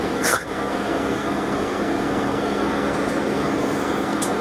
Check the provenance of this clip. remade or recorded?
remade